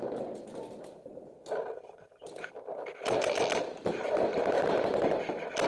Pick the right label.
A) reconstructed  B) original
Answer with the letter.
B